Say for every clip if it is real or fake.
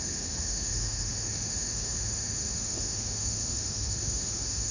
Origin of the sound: fake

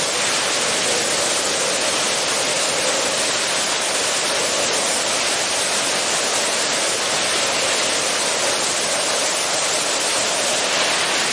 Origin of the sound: real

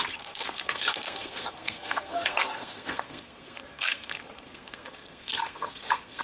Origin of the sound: fake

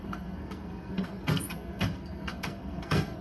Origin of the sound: fake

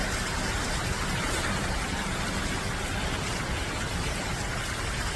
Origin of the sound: real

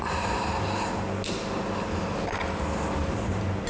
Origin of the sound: real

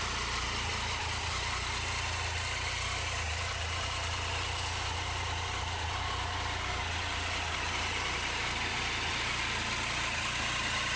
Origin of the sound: real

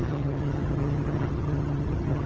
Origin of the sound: fake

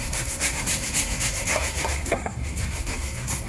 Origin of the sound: fake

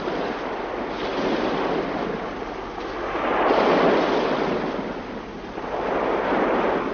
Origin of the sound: real